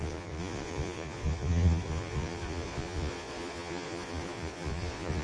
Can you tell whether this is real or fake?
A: fake